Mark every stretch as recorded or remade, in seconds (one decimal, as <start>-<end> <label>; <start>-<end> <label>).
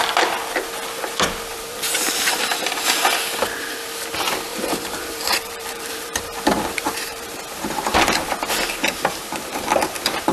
0.0-1.5 recorded; 1.5-2.3 remade; 2.3-4.5 recorded; 4.5-7.4 remade; 7.4-10.3 recorded